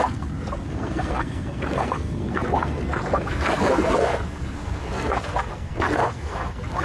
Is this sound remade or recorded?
remade